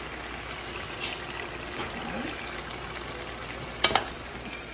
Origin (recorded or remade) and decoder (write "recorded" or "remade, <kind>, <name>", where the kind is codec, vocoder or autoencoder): recorded